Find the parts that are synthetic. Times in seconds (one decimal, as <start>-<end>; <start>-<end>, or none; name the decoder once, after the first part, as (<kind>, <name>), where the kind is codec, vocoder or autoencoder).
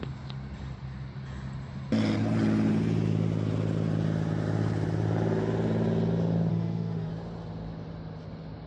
6.5-7.1 (autoencoder, DAC-VAE)